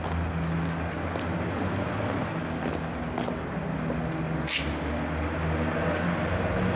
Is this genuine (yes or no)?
yes